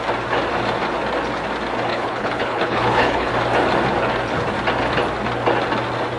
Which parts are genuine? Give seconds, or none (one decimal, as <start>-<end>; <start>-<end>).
0.0-1.9; 3.3-6.2